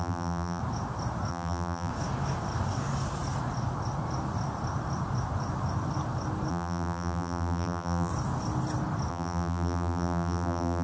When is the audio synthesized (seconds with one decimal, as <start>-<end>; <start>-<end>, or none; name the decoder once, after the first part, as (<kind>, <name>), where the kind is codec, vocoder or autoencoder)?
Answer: 0.0-0.6 (vocoder, BigVGAN v2); 1.3-1.9; 6.5-8.1; 9.1-10.8